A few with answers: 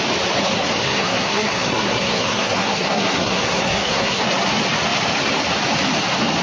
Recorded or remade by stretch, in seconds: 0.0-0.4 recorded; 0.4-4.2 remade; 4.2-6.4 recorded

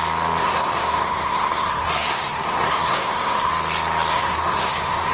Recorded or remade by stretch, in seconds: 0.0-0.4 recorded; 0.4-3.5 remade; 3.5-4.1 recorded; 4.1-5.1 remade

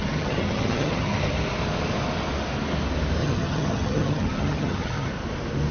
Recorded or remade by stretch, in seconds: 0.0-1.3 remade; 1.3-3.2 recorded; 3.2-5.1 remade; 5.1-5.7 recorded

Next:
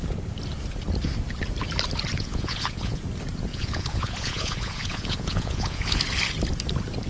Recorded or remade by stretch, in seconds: 0.0-2.1 recorded; 2.1-3.0 remade; 3.0-3.5 recorded; 3.5-6.0 remade; 6.0-7.1 recorded

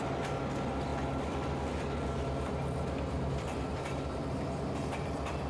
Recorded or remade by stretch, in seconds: 0.0-0.9 recorded; 0.9-4.2 remade; 4.2-5.5 recorded